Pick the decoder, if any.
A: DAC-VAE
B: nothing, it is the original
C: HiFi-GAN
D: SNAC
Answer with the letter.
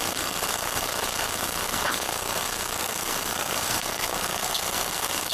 D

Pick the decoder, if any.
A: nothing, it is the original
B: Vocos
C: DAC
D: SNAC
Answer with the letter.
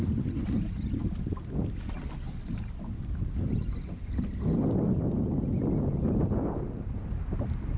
A